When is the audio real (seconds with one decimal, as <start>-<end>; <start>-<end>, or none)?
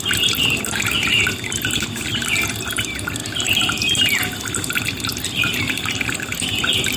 0.0-3.2; 3.7-5.1; 6.1-7.0